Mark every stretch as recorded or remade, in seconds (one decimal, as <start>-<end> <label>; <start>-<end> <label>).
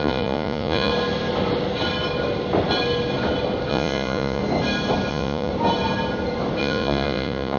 0.0-0.9 remade; 0.9-3.7 recorded; 3.7-4.4 remade; 4.4-5.1 recorded; 5.1-5.5 remade; 5.5-6.6 recorded; 6.6-7.6 remade